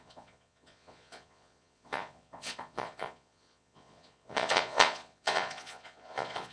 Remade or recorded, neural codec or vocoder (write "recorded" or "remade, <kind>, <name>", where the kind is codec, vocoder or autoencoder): remade, vocoder, Vocos